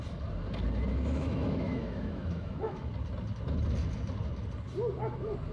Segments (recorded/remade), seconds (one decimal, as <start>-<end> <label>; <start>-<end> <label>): 0.0-0.9 recorded; 0.9-2.9 remade; 2.9-5.5 recorded